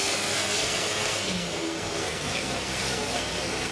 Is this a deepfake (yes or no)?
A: yes